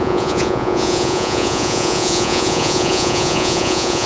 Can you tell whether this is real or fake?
fake